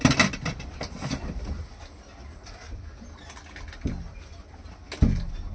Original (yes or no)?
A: yes